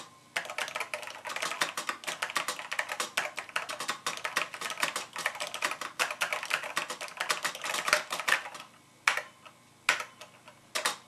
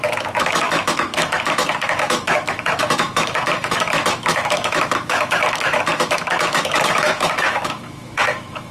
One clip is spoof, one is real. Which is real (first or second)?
first